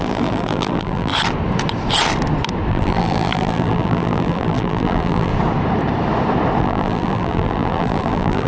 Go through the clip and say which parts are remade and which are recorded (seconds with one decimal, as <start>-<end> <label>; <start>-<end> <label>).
0.0-1.1 remade; 1.1-2.7 recorded; 2.7-5.3 remade; 5.3-6.6 recorded; 6.6-8.5 remade

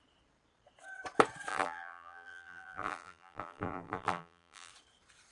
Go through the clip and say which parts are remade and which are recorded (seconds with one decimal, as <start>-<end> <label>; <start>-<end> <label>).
0.0-1.5 recorded; 1.5-4.7 remade; 4.7-5.3 recorded

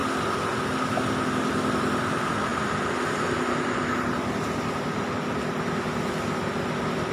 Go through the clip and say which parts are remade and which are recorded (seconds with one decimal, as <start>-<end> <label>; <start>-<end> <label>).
0.0-7.1 recorded

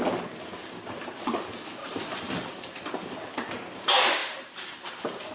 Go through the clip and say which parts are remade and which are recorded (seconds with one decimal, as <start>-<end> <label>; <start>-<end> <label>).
0.0-0.6 recorded; 0.6-1.2 remade; 1.2-1.8 recorded; 1.8-3.5 remade; 3.5-4.2 recorded; 4.2-5.3 remade

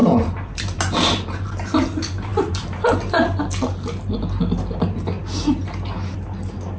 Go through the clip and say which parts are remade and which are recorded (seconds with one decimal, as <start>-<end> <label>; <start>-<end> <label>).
0.0-0.8 remade; 0.8-2.3 recorded; 2.3-3.4 remade; 3.4-6.8 recorded

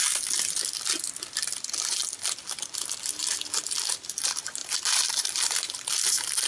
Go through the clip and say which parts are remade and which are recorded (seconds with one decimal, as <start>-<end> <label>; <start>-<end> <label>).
0.0-4.6 recorded; 4.6-6.5 remade